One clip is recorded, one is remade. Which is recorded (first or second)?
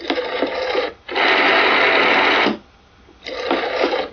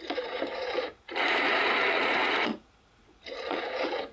first